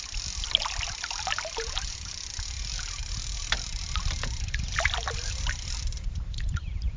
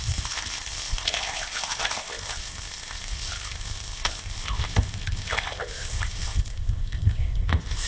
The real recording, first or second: first